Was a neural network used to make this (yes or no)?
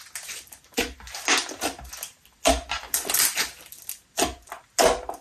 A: no